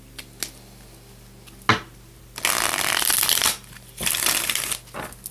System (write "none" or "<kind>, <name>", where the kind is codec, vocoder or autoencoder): none